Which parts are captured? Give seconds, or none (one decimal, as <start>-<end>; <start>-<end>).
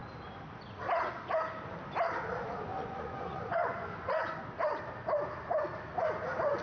0.0-2.7; 4.4-6.6